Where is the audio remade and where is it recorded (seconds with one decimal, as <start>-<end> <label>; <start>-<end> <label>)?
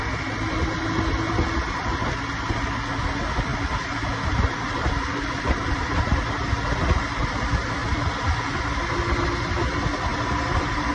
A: 0.0-3.5 recorded; 3.5-6.5 remade; 6.5-10.1 recorded; 10.1-10.9 remade